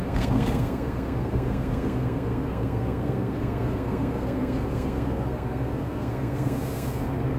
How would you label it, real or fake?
fake